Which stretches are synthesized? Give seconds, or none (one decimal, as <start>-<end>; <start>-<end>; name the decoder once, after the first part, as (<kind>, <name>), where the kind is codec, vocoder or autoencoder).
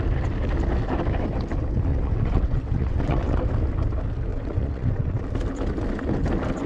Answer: 1.9-3.4 (vocoder, WaveNeXt); 4.3-5.2